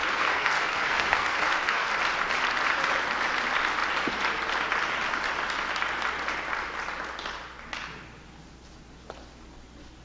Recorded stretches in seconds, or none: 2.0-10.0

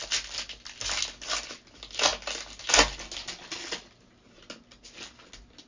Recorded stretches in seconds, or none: 0.0-5.7

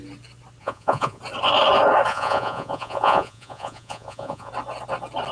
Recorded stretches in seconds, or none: 0.0-0.6; 1.2-2.1; 4.5-5.3

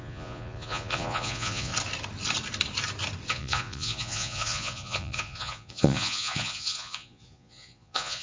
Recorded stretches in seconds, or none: 1.7-3.3

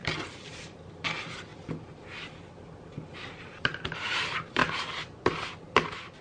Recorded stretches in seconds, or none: 0.9-6.2

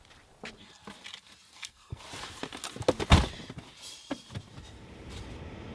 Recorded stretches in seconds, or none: 0.0-1.5; 2.0-5.7